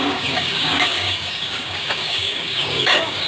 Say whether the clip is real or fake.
fake